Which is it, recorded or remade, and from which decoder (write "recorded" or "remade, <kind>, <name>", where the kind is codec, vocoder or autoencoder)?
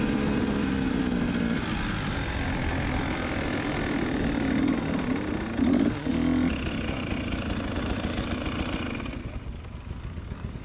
recorded